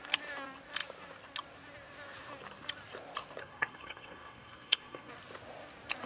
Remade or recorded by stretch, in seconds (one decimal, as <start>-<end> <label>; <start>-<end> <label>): 0.0-3.4 recorded; 3.4-5.1 remade; 5.1-6.1 recorded